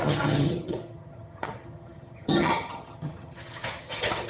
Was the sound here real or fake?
fake